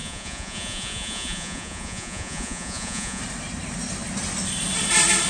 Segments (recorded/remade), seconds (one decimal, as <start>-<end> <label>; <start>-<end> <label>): 0.0-3.2 remade; 3.2-5.3 recorded